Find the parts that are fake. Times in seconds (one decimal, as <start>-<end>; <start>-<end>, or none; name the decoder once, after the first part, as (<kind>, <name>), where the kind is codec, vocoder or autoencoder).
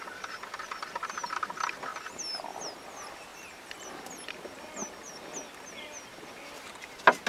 3.3-4.0 (vocoder, BigVGAN v2)